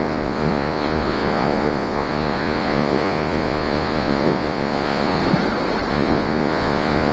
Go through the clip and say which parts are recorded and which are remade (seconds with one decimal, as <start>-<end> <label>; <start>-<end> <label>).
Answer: 0.0-5.2 remade; 5.2-5.9 recorded; 5.9-7.1 remade